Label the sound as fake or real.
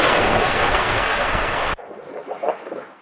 fake